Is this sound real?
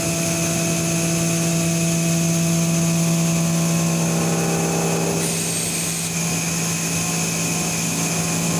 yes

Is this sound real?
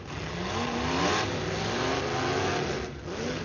yes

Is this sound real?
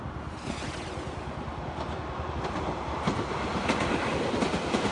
yes